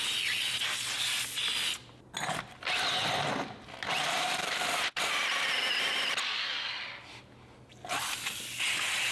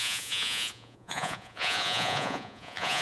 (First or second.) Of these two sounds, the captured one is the first